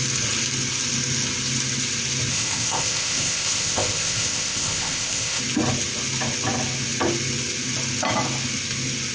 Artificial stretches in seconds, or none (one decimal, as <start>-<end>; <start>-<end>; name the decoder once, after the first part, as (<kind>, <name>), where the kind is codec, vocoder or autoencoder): 2.3-5.4 (codec, ZipCodec)